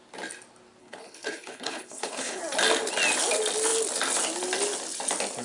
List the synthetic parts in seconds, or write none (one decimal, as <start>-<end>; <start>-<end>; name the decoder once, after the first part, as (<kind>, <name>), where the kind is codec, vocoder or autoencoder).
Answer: 0.8-2.4 (codec, HILCodec)